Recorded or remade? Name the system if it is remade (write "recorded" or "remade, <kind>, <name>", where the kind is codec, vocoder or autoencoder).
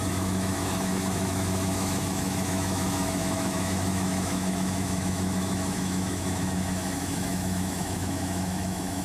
remade, autoencoder, DAC-VAE